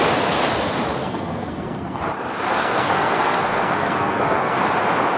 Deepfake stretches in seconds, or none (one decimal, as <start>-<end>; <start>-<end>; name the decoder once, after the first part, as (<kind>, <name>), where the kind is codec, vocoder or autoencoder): 1.0-2.0 (codec, SNAC); 2.5-4.6